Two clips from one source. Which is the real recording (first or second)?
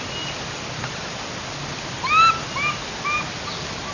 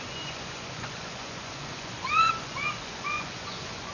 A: first